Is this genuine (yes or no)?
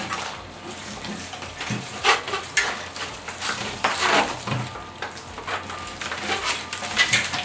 no